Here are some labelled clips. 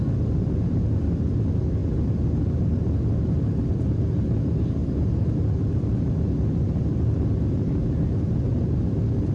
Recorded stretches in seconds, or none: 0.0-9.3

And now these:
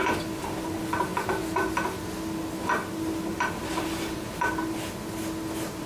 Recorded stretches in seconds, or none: 0.0-3.3; 4.4-5.9

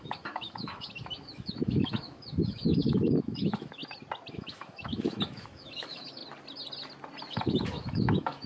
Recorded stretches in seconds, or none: 3.8-4.3; 6.2-7.3

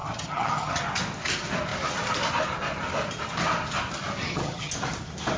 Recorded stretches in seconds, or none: 0.8-4.2; 4.7-5.4

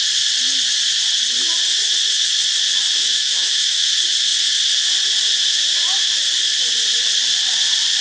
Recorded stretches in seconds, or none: 0.0-3.0; 3.9-8.0

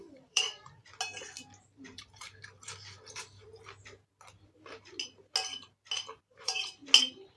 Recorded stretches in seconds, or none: 0.8-1.6; 3.5-6.2; 6.8-7.4

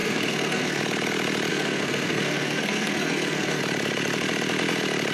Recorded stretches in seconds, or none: 0.8-1.5; 3.6-5.1

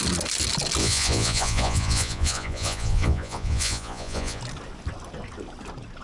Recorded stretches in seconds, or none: 0.0-0.8; 4.4-6.0